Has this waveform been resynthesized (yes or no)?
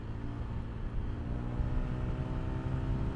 no